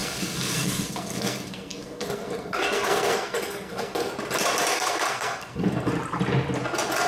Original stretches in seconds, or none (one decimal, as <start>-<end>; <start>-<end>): 4.1-4.7; 5.9-7.1